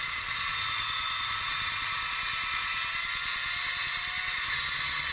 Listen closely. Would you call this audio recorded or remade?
recorded